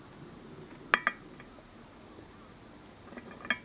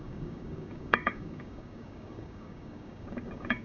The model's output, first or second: second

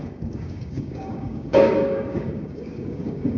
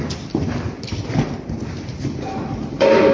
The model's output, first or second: first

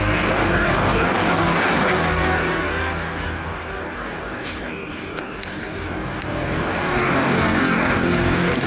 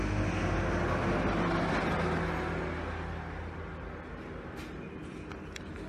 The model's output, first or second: first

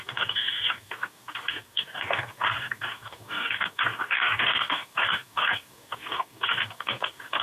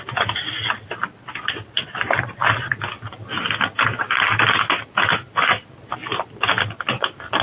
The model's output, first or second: first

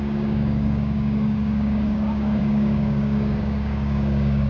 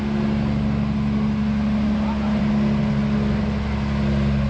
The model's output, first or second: first